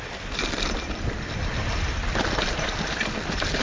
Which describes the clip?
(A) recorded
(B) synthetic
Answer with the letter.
A